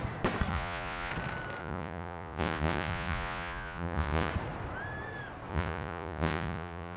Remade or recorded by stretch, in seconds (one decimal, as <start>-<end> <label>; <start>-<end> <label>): 0.0-0.5 recorded; 0.5-1.1 remade; 1.1-1.6 recorded; 1.6-4.3 remade; 4.3-5.5 recorded; 5.5-7.0 remade